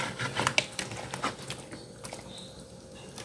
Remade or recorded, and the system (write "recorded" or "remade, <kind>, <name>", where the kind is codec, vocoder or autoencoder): recorded